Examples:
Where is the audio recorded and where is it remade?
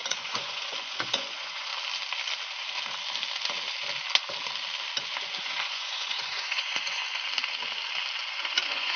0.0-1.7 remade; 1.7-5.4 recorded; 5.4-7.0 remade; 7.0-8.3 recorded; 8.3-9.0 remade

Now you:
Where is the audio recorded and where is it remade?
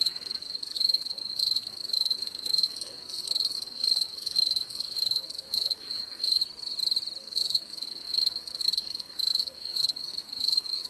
0.0-6.4 remade; 6.4-7.2 recorded; 7.2-10.9 remade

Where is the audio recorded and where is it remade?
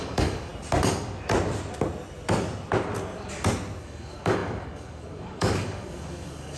0.0-0.5 remade; 0.5-3.8 recorded; 3.8-6.6 remade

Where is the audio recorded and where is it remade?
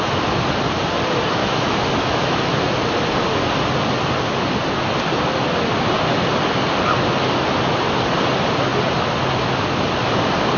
0.0-1.4 recorded; 1.4-2.4 remade; 2.4-10.6 recorded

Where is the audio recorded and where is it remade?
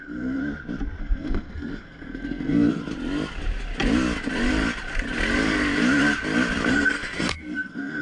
0.0-0.4 remade; 0.4-1.0 recorded; 1.0-2.8 remade; 2.8-6.7 recorded; 6.7-8.0 remade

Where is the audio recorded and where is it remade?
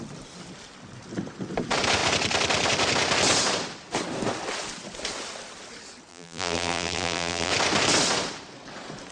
0.0-6.1 recorded; 6.1-7.5 remade; 7.5-9.1 recorded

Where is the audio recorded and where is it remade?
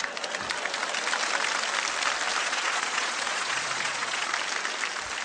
0.0-2.4 recorded; 2.4-4.3 remade; 4.3-5.2 recorded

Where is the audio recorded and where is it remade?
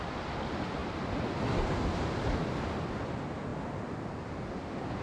0.0-5.0 recorded